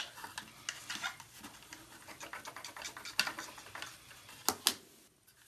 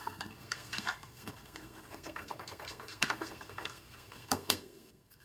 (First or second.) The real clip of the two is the first